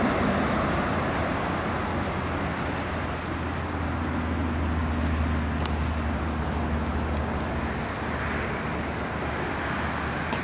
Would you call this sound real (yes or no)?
yes